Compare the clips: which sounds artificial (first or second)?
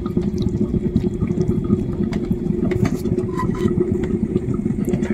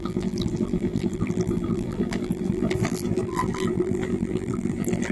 second